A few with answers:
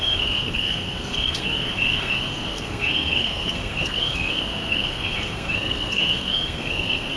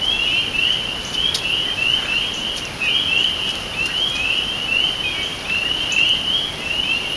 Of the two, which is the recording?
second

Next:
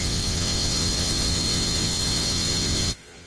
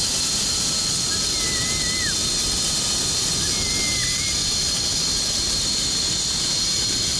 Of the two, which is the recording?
second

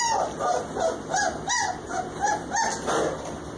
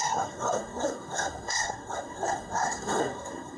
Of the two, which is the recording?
first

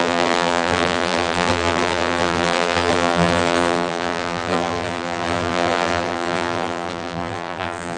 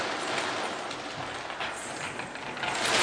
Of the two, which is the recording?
second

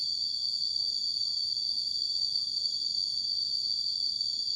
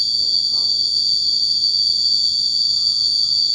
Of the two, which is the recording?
first